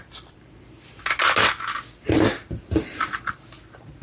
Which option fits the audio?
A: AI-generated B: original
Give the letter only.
B